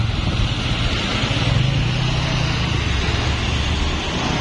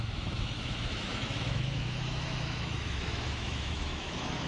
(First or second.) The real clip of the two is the first